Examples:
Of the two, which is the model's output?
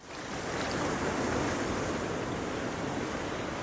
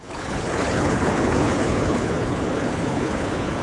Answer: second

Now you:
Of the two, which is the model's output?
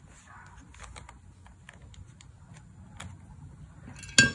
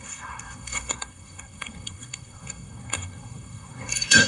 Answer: second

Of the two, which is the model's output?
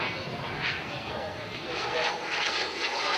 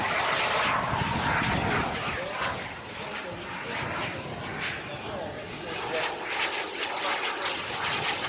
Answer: first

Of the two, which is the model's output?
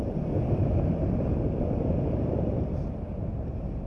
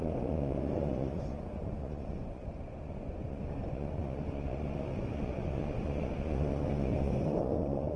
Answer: second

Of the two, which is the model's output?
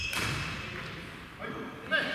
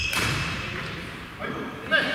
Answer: second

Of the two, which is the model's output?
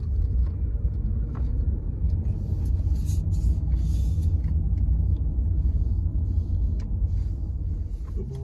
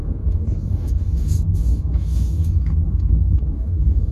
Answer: second